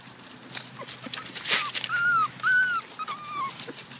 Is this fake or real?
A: real